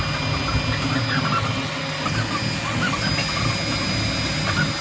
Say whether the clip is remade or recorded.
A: recorded